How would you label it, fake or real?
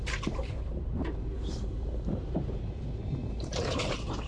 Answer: fake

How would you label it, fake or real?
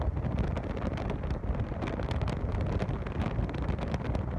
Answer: real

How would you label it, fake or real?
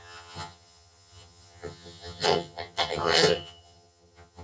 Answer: fake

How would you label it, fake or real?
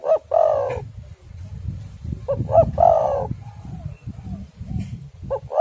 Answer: real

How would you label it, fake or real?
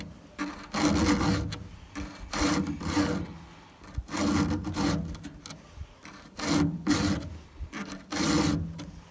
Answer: real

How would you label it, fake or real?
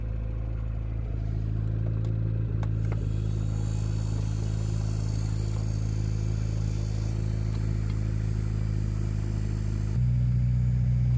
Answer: real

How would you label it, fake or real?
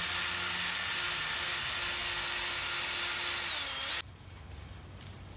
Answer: real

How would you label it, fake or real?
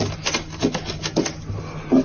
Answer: real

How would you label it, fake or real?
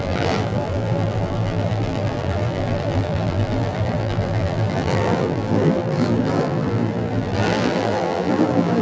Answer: fake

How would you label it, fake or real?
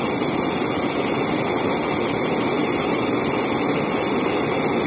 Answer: real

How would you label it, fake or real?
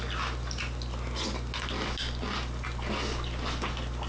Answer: real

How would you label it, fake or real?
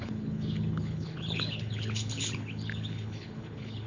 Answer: fake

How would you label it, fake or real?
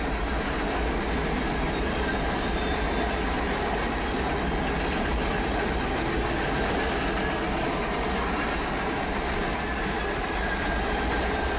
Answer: real